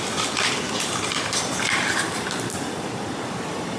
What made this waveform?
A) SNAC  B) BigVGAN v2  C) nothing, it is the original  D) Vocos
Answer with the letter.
B